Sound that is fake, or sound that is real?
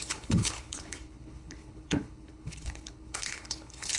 fake